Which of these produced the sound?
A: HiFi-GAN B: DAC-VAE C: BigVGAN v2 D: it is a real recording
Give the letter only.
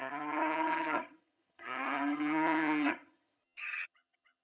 A